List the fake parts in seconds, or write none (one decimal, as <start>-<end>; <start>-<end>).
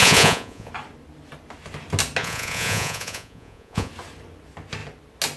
0.0-0.7; 2.2-3.9